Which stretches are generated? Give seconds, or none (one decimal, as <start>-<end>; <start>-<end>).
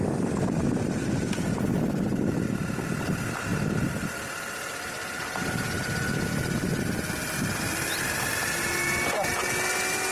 none